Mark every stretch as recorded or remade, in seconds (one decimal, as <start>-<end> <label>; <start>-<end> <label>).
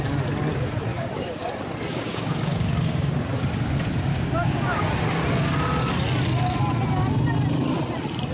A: 0.0-0.9 recorded; 0.9-1.5 remade; 1.5-1.9 recorded; 1.9-3.3 remade; 3.3-4.1 recorded; 4.1-4.8 remade; 4.8-8.3 recorded